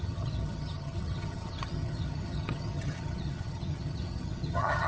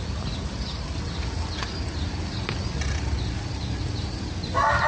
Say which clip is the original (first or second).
second